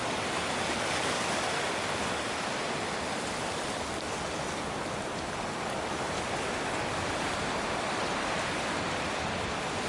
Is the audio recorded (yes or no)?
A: yes